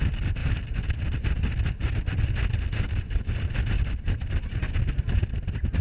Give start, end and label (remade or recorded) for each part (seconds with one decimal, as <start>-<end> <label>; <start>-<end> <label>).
0.0-5.8 recorded